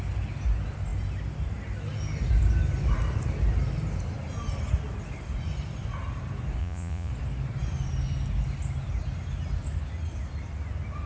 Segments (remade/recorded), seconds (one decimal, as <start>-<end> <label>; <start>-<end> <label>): 0.0-6.6 recorded; 6.6-7.1 remade; 7.1-11.1 recorded